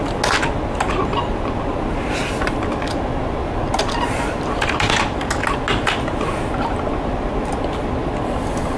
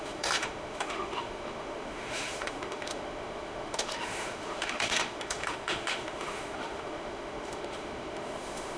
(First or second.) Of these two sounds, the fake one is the second